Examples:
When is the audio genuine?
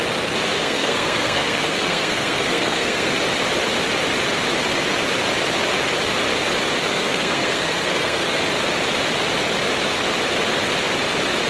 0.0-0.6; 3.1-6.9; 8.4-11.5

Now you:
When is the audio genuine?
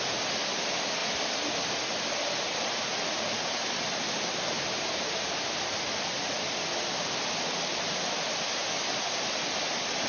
0.0-10.1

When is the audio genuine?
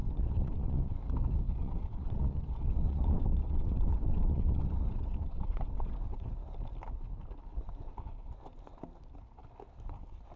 1.0-1.6; 6.3-10.4